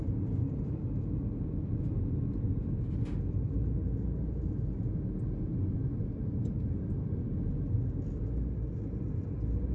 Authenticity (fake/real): real